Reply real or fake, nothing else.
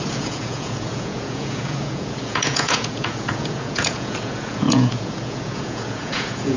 fake